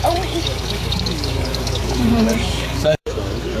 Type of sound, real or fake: fake